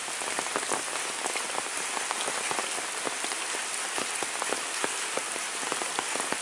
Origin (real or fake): real